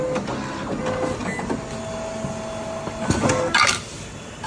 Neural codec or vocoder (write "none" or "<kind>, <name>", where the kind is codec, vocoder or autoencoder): none